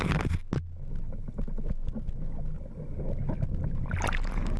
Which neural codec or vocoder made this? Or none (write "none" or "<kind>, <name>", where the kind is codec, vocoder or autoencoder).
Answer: none